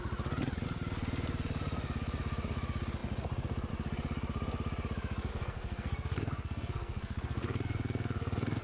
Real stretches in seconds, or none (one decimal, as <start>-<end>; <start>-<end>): 0.0-5.3